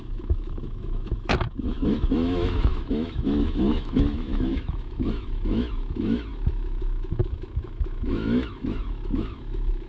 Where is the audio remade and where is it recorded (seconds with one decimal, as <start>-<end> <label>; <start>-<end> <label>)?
0.0-9.9 remade